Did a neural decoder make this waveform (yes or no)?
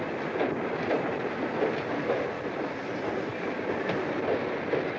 no